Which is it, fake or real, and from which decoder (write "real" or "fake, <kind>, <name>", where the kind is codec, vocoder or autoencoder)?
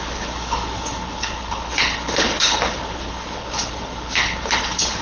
fake, codec, HILCodec